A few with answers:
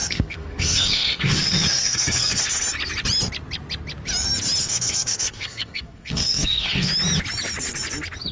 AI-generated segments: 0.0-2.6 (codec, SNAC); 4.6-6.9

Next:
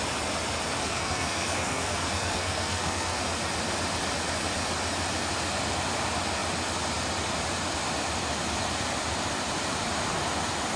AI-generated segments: 0.8-3.2 (codec, SNAC)

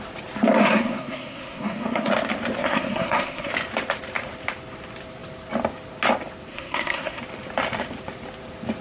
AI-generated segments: 0.6-2.1 (codec, SNAC); 2.6-3.5; 6.5-7.2

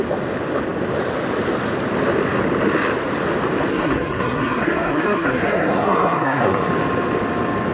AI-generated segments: 3.7-6.7 (codec, SNAC)